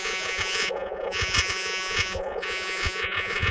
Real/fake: fake